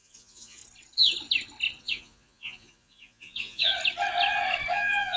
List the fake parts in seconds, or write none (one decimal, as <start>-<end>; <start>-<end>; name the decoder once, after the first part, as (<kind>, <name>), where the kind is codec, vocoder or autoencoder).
0.0-0.6 (vocoder, Vocos); 1.8-3.7; 4.7-5.2